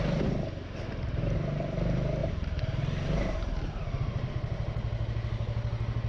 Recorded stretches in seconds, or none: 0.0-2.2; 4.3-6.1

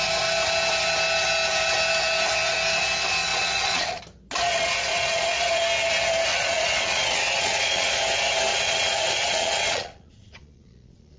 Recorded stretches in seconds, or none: 0.0-3.3; 4.0-4.5; 5.6-6.3; 8.0-8.5

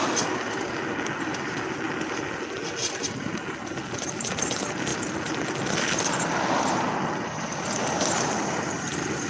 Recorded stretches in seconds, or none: 0.0-9.3

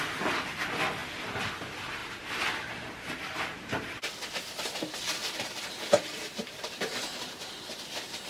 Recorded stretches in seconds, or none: 0.0-2.0; 4.1-5.2; 7.4-8.3

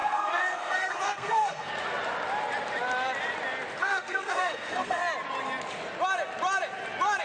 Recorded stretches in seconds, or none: 1.7-3.8; 5.0-7.2

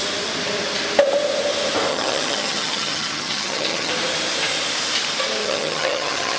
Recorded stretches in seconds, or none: 0.0-1.9; 3.9-5.4

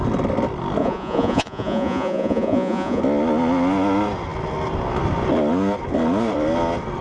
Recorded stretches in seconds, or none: 0.0-0.8; 3.0-7.0

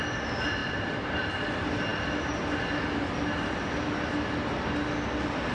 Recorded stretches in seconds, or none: 0.0-5.5